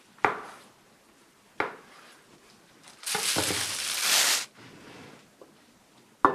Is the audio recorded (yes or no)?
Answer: yes